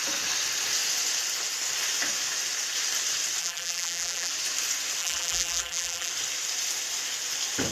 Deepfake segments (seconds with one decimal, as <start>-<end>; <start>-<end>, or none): 3.4-4.3; 5.0-6.1